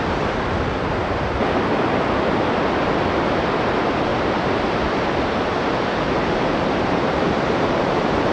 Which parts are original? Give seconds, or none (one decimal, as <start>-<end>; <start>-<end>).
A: 0.0-4.1